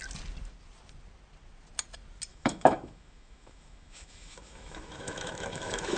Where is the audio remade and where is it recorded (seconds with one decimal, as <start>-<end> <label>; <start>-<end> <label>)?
0.0-2.3 recorded; 2.3-6.0 remade